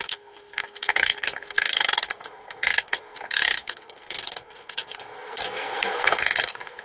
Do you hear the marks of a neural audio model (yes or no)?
yes